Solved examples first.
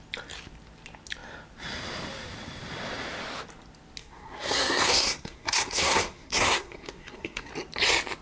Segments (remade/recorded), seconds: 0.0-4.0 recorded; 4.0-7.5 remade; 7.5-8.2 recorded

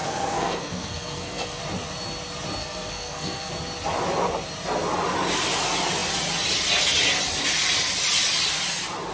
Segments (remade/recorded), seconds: 0.0-1.6 remade; 1.6-2.6 recorded; 2.6-3.5 remade; 3.5-9.1 recorded

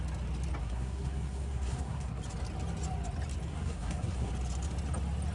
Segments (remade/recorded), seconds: 0.0-0.6 recorded; 0.6-2.2 remade; 2.2-3.5 recorded; 3.5-4.3 remade; 4.3-5.3 recorded

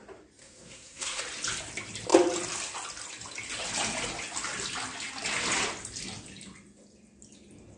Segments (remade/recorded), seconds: 0.0-0.4 recorded; 0.4-1.2 remade; 1.2-7.8 recorded